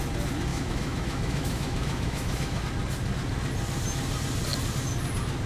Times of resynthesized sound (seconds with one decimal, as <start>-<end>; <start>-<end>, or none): 0.5-2.6